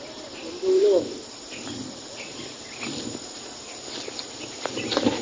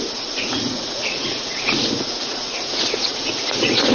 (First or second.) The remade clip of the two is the second